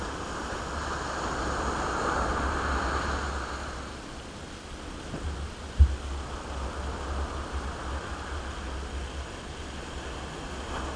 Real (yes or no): yes